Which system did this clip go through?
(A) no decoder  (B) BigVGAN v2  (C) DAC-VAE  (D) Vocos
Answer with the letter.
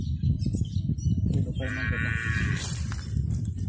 B